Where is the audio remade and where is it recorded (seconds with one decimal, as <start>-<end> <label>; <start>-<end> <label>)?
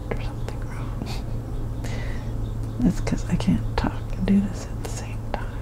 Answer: 0.0-5.6 recorded